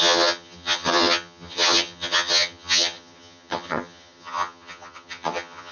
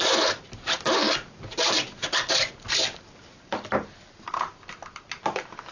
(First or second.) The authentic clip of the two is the second